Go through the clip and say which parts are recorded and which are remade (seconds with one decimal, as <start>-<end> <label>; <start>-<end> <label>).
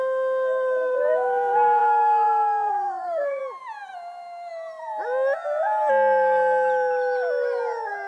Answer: 0.0-3.4 remade; 3.4-8.1 recorded